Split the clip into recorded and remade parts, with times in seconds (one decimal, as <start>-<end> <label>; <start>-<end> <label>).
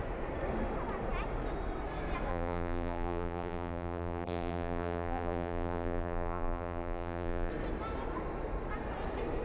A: 0.0-2.3 recorded; 2.3-7.5 remade; 7.5-9.4 recorded